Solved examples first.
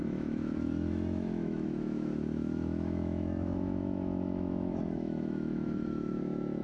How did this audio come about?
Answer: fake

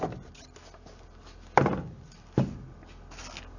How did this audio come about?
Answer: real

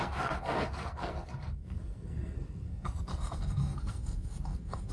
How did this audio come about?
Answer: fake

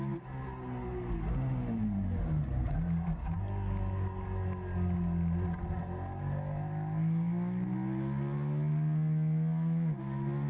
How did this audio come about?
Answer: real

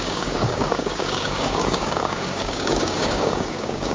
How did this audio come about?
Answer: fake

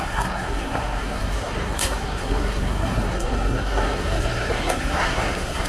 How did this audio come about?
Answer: fake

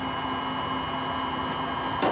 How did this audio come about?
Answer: real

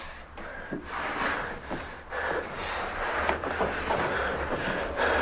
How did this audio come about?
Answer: fake